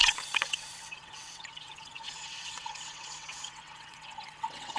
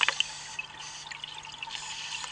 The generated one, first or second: first